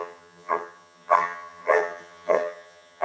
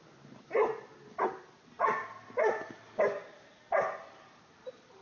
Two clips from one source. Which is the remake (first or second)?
first